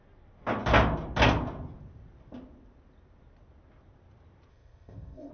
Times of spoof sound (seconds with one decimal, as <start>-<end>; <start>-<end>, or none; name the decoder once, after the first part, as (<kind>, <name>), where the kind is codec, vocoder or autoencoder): 4.5-5.3 (codec, ZipCodec)